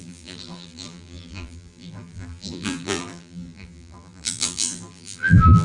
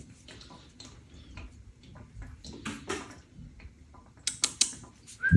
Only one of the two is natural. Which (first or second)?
second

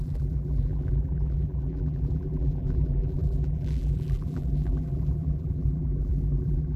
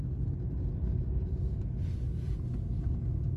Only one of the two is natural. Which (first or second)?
second